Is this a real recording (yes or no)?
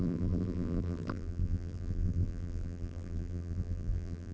no